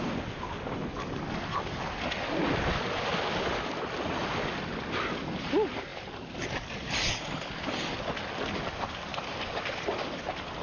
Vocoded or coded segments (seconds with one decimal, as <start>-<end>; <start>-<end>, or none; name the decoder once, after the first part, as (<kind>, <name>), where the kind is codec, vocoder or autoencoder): none